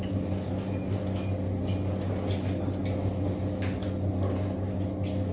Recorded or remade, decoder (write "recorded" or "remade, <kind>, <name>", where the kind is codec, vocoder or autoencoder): recorded